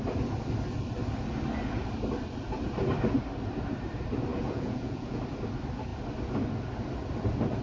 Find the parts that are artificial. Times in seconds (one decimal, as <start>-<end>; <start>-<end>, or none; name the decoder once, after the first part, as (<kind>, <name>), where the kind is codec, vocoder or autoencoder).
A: 4.3-5.2 (vocoder, Vocos)